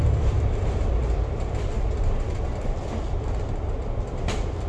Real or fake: real